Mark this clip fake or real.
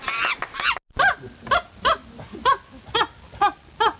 real